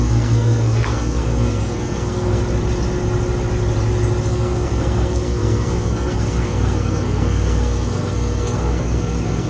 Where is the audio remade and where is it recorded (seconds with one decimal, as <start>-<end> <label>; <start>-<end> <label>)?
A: 0.0-2.4 remade; 2.4-4.3 recorded; 4.3-9.5 remade